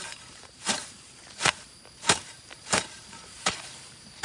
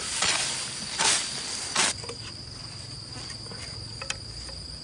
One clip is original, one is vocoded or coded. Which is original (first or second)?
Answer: second